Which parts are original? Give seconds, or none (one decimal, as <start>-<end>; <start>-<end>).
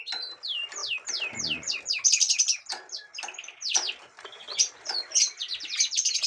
0.0-6.3